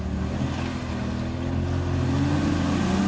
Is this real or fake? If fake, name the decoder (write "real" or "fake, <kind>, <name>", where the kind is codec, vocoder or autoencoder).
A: real